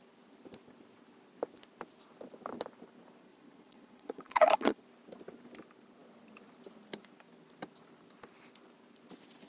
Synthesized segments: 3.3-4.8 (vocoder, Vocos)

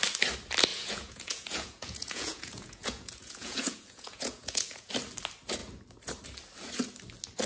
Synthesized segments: 0.7-4.9 (vocoder, Vocos)

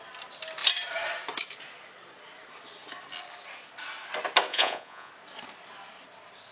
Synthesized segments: 4.5-5.1 (vocoder, Vocos)

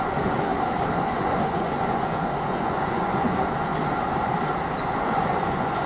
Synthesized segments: 0.0-0.5 (vocoder, Vocos); 1.0-3.7; 4.8-5.9

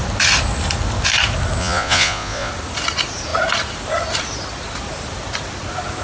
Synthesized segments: 1.6-2.5 (vocoder, Vocos)